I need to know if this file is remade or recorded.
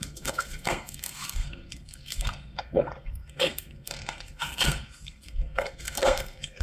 remade